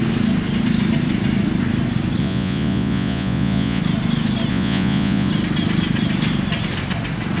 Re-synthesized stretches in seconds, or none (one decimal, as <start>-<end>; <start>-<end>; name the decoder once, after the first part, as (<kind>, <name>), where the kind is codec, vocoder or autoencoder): 2.2-3.8 (vocoder, Vocos); 4.5-5.3